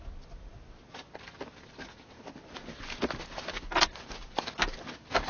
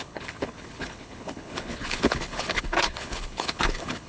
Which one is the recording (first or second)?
first